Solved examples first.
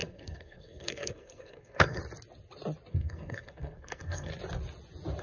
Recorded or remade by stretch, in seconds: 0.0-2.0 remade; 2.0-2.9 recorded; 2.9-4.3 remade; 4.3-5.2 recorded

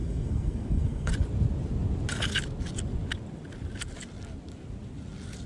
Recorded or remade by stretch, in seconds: 0.0-1.1 remade; 1.1-5.5 recorded

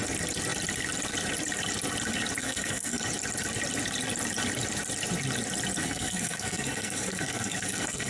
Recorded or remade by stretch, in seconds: 0.0-2.4 recorded; 2.4-3.0 remade; 3.0-5.8 recorded; 5.8-8.1 remade

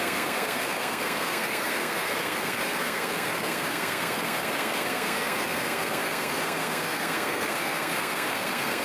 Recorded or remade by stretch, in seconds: 0.0-8.8 remade

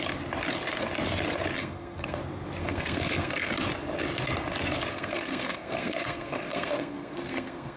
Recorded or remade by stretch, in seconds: 0.0-1.6 recorded; 1.6-2.2 remade; 2.2-2.6 recorded; 2.6-3.5 remade; 3.5-4.9 recorded; 4.9-7.8 remade

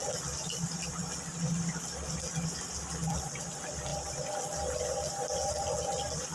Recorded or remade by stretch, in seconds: 0.0-6.3 recorded

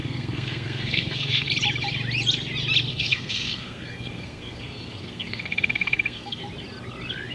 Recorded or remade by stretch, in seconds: 0.0-1.5 remade; 1.5-2.9 recorded; 2.9-6.4 remade; 6.4-7.3 recorded